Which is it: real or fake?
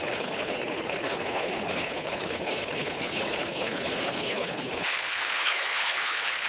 fake